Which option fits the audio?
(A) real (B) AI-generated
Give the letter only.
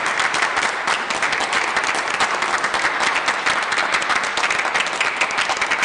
A